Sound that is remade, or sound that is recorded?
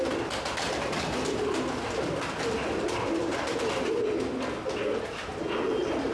recorded